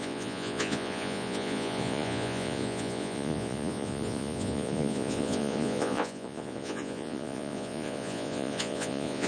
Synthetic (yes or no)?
yes